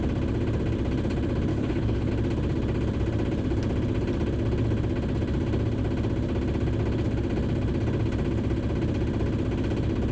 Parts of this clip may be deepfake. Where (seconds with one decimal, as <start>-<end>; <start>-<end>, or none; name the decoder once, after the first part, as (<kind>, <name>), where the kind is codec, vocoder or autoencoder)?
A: 1.5-2.1 (codec, HILCodec)